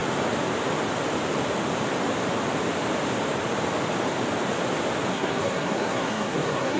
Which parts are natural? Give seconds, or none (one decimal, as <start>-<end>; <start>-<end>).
0.0-5.1